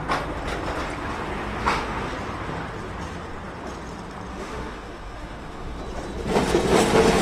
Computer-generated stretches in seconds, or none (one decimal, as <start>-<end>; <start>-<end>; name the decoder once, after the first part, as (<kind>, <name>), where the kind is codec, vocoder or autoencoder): 1.6-2.1 (autoencoder, DAC-VAE); 4.3-5.8